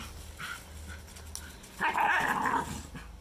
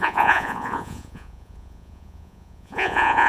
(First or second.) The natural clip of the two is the first